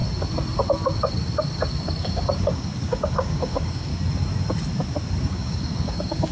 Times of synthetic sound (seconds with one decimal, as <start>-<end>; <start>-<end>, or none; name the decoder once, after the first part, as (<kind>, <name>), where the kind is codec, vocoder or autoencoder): 1.8-3.9 (codec, DAC); 5.2-6.3